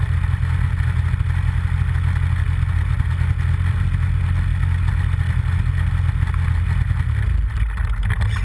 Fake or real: real